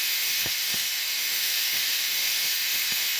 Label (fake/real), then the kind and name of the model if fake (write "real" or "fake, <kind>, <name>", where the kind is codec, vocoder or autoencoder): fake, autoencoder, DAC-VAE